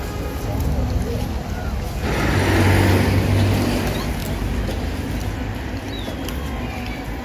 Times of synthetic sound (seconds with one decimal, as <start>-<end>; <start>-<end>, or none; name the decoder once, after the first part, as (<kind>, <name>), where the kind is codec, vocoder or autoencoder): none